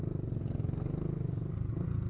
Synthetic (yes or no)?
no